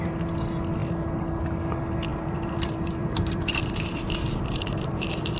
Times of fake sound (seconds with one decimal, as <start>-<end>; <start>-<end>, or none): 2.1-5.4

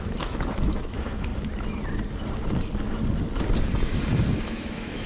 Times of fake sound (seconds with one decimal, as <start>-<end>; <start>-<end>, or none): 0.0-1.3; 4.4-5.1

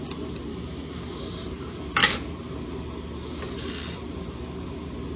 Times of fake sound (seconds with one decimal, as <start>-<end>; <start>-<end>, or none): 0.5-1.0